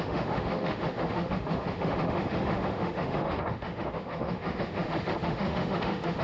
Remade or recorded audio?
remade